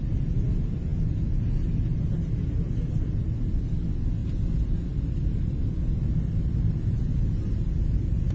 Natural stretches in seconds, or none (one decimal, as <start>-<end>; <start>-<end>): 0.0-8.3